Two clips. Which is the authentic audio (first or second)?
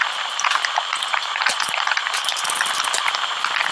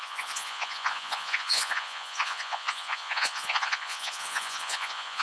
first